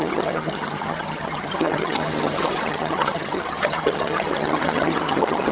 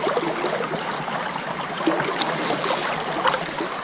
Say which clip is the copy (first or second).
first